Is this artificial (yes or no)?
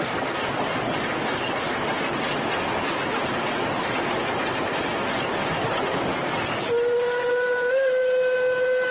no